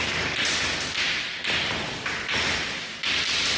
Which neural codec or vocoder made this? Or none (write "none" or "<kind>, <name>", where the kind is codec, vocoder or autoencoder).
none